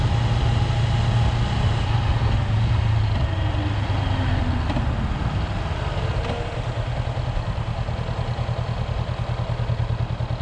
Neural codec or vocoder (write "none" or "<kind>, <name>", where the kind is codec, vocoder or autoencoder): none